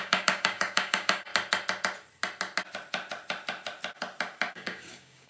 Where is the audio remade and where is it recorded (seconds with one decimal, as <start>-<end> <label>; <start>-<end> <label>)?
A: 0.0-1.3 remade; 1.3-4.5 recorded; 4.5-5.3 remade